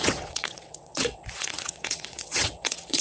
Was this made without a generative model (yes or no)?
no